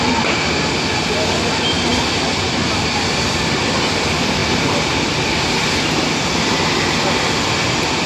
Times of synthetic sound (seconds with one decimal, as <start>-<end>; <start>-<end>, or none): none